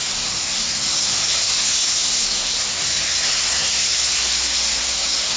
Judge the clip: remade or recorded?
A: remade